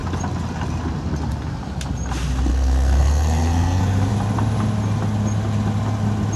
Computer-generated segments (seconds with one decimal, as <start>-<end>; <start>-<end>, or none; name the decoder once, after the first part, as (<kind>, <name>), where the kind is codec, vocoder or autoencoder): 2.5-4.1 (codec, SNAC)